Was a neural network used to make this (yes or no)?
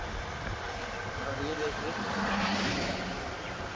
no